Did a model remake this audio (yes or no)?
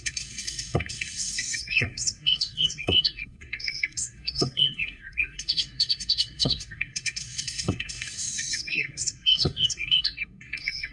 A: yes